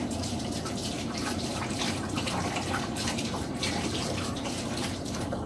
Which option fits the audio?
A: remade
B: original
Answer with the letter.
A